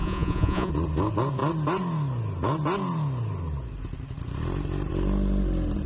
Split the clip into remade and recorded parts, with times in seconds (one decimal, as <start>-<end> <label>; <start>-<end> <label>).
0.0-0.7 remade; 0.7-5.9 recorded